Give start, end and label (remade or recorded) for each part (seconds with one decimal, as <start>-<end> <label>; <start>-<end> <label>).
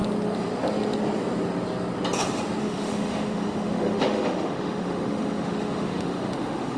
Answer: 0.0-2.6 recorded; 2.6-6.8 remade